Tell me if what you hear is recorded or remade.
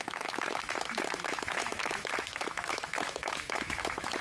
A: remade